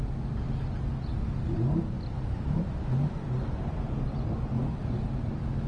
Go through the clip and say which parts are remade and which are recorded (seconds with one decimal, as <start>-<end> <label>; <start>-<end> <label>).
0.0-5.7 recorded